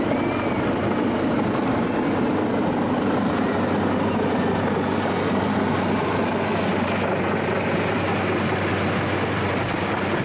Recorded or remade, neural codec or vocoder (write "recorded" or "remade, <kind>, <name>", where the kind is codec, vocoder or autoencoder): recorded